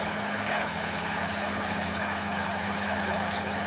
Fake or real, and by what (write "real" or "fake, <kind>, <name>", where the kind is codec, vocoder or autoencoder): fake, codec, HILCodec